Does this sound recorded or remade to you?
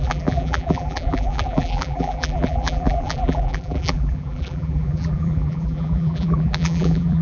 remade